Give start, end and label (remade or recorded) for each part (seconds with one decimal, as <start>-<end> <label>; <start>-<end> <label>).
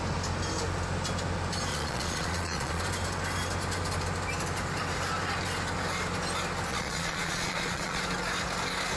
0.0-1.7 recorded; 1.7-2.8 remade; 2.8-6.7 recorded; 6.7-8.0 remade; 8.0-9.0 recorded